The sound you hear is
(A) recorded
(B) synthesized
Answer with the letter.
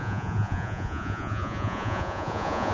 B